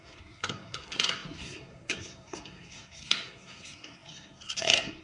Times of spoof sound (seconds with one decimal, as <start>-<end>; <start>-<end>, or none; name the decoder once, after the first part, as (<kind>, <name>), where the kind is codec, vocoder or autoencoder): 0.0-5.0 (codec, SNAC)